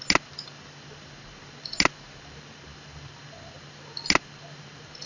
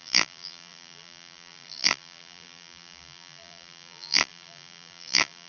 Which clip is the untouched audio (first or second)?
first